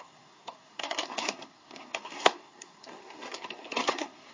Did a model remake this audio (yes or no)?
yes